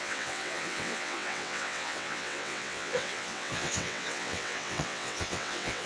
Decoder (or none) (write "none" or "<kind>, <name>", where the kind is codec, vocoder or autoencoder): vocoder, WaveNeXt